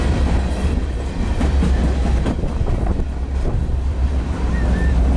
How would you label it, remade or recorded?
remade